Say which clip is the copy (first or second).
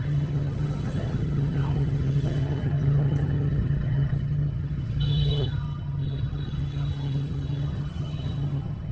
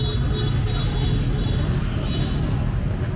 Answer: first